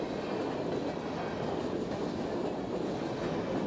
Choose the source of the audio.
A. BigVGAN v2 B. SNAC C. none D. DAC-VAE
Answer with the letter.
C